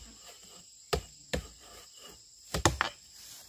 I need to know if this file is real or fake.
real